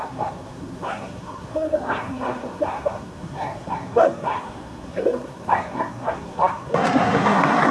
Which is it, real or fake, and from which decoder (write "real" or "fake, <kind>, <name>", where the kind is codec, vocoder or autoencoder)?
fake, codec, SNAC